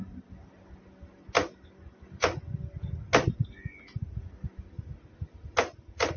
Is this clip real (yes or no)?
yes